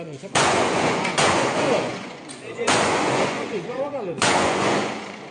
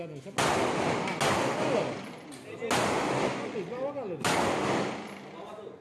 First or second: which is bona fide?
second